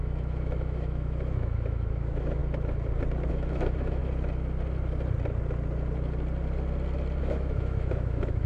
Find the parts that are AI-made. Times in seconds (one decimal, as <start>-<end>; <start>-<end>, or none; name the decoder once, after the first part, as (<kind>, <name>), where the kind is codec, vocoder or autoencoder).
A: 0.0-2.4 (autoencoder, DAC-VAE); 3.3-4.0; 7.2-8.5